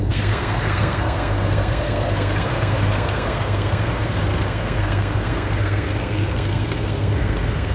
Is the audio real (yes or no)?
no